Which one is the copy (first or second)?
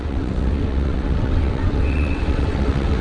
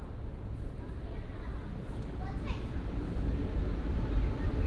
first